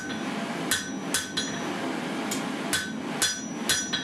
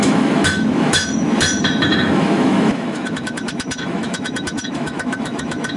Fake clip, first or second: second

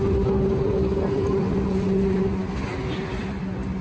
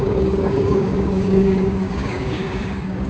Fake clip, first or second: second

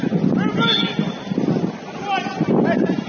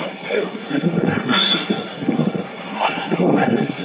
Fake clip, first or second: second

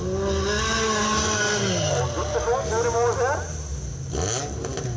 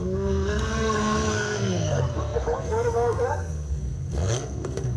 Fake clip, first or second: second